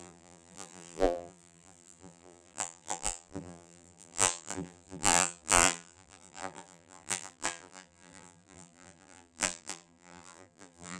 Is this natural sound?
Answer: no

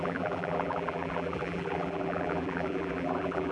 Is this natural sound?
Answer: no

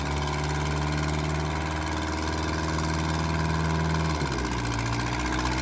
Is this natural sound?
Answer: yes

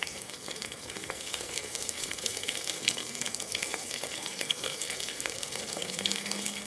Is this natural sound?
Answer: no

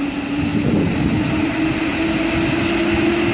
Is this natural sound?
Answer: yes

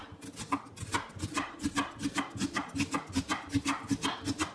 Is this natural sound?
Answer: yes